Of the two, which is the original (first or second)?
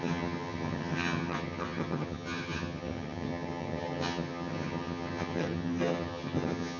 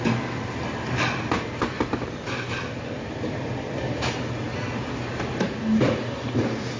second